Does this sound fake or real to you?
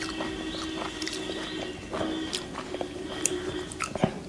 real